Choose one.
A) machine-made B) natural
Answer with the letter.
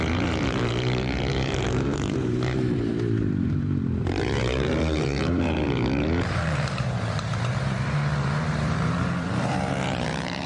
A